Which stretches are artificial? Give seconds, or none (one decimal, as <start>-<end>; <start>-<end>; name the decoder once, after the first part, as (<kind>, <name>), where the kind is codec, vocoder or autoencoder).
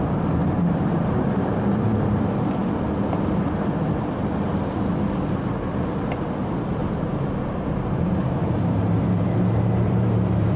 0.0-6.8 (vocoder, BigVGAN v2); 8.4-10.6